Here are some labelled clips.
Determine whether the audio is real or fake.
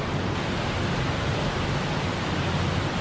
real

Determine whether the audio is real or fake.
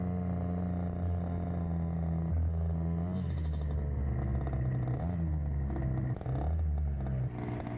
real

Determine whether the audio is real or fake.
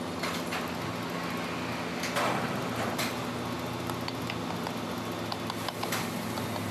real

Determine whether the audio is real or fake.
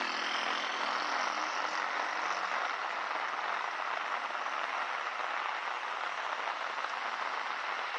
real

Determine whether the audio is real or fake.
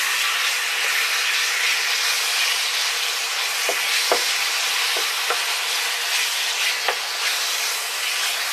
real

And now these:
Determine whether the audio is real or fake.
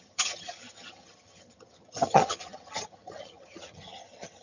fake